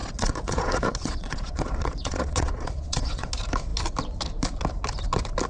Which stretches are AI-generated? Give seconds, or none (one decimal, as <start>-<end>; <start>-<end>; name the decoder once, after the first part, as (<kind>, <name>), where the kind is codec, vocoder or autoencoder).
0.0-3.3 (vocoder, Vocos)